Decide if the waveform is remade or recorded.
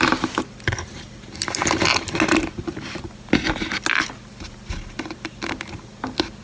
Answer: recorded